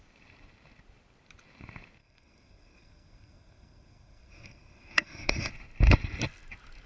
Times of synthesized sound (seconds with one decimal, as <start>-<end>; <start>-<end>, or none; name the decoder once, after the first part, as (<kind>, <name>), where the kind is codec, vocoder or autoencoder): 2.0-5.5 (codec, SNAC)